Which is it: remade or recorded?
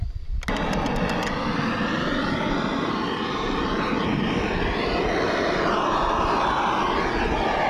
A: recorded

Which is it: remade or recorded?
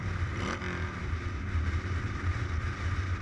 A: recorded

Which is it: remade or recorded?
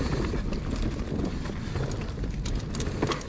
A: recorded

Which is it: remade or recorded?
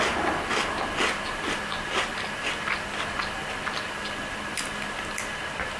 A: recorded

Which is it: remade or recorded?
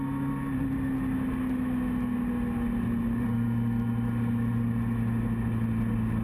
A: recorded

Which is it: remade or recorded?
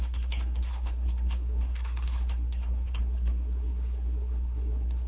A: remade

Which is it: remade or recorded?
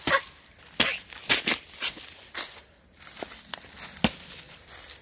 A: recorded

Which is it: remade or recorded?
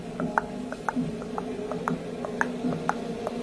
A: recorded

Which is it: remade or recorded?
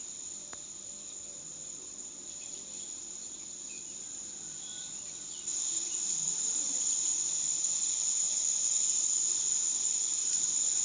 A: remade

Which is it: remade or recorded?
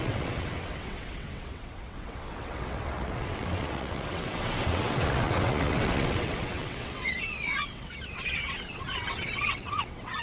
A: remade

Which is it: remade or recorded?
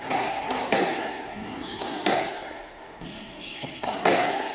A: remade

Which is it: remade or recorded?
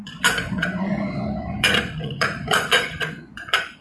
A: remade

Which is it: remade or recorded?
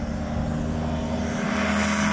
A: recorded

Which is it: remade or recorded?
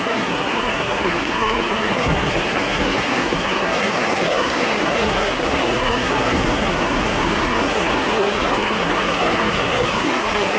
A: remade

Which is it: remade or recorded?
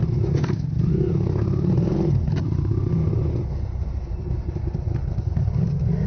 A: recorded